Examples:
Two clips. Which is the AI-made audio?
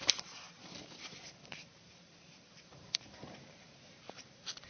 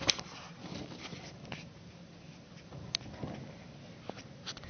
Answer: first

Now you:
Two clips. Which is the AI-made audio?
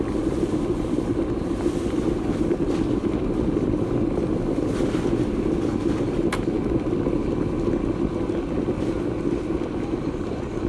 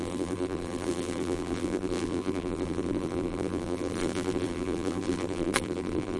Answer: second